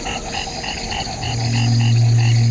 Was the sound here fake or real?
real